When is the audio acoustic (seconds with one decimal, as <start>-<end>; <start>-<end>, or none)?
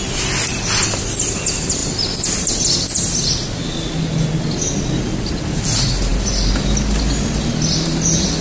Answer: 0.0-8.4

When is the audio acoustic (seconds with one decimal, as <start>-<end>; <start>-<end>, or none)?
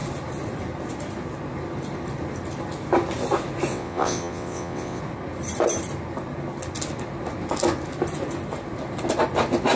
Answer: 0.0-3.7; 5.0-9.8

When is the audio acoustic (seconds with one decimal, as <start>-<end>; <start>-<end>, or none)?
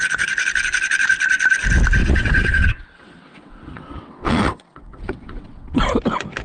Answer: 0.0-2.0; 5.8-6.4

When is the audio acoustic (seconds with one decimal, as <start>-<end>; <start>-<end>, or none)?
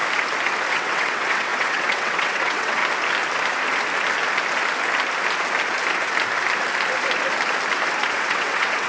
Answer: 0.0-0.7; 2.8-8.1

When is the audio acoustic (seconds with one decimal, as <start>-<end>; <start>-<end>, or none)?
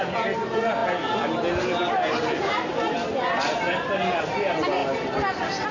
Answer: 0.0-5.7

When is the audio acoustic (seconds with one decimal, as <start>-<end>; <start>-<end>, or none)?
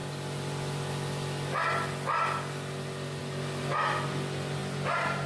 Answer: 0.0-5.3